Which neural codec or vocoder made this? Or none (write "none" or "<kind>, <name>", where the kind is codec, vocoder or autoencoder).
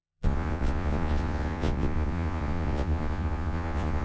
vocoder, Vocos